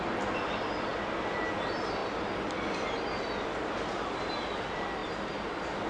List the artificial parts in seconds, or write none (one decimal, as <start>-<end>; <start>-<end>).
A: 2.0-4.2